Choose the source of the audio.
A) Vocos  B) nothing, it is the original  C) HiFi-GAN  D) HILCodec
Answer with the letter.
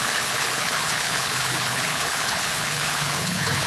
D